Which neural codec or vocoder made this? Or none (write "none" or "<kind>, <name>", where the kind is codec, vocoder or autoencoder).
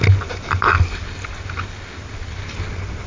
none